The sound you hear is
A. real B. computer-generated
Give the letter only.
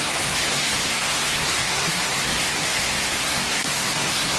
B